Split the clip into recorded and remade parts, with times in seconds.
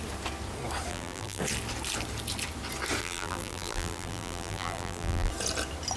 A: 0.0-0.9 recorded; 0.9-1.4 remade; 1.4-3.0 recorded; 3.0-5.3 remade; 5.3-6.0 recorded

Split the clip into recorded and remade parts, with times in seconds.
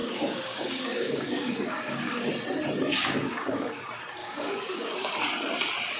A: 0.0-2.3 remade; 2.3-2.9 recorded; 2.9-3.8 remade; 3.8-4.2 recorded; 4.2-5.1 remade; 5.1-6.0 recorded